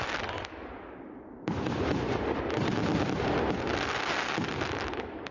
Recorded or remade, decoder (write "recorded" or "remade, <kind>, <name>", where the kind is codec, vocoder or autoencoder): remade, vocoder, BigVGAN v2